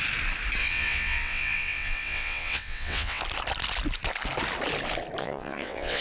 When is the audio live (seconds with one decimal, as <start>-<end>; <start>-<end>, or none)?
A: 0.0-0.6; 3.2-5.2